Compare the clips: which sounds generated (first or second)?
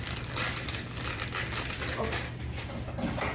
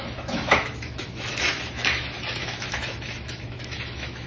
second